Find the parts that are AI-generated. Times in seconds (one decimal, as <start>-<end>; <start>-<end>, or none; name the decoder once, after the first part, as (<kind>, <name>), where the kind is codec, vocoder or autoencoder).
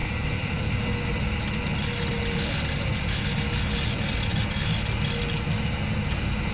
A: 0.0-0.5 (vocoder, BigVGAN v2)